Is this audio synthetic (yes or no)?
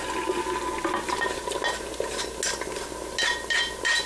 no